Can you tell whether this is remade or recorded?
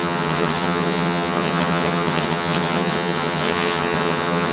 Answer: remade